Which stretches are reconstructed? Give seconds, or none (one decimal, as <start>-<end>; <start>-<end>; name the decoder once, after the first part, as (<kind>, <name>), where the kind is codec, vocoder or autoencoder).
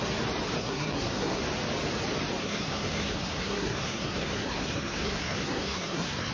0.6-1.4 (codec, SNAC); 2.4-6.3